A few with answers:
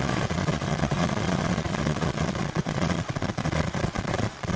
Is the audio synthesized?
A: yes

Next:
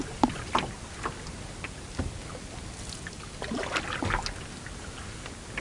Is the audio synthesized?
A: no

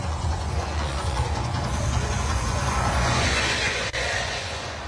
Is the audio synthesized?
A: yes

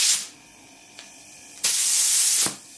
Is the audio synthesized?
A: no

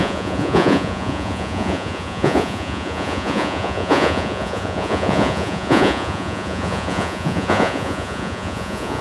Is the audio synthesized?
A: yes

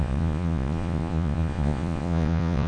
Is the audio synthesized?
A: yes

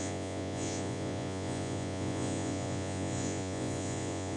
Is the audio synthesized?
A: yes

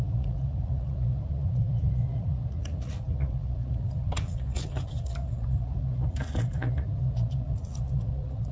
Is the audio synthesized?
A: yes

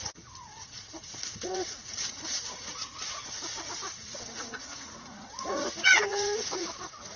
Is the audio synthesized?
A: yes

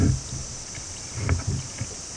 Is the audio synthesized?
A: no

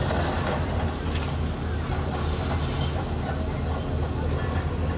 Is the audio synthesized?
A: no